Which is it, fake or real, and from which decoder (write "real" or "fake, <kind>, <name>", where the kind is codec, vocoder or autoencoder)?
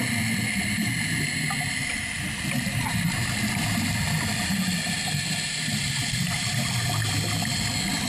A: real